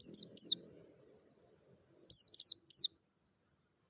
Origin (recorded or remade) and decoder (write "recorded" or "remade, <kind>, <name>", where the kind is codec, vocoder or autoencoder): recorded